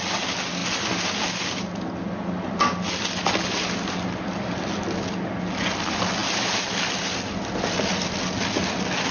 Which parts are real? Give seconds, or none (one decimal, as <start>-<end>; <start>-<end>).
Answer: 0.0-9.1